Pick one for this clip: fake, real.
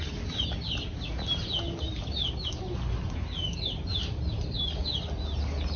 real